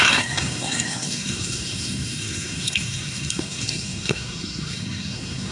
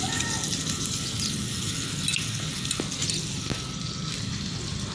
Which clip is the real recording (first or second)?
second